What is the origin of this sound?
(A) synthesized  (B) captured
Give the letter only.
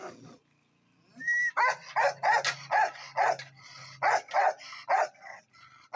B